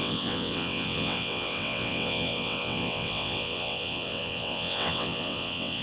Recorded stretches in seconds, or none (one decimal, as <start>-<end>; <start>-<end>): none